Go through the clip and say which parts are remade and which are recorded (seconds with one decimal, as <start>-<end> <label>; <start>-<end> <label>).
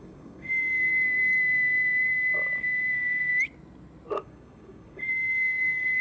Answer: 0.0-0.9 remade; 0.9-4.2 recorded; 4.2-6.0 remade